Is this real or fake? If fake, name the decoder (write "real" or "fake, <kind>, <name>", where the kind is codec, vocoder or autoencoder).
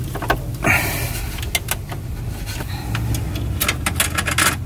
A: real